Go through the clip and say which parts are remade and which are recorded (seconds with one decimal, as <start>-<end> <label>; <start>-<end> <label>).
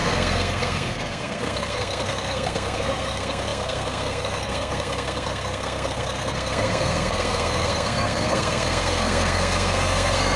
0.0-10.4 remade